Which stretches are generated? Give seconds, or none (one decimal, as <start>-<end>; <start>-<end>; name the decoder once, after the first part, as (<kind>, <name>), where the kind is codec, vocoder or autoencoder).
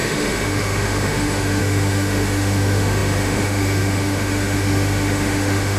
0.0-5.8 (autoencoder, DAC-VAE)